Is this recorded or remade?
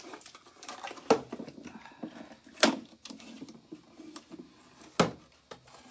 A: recorded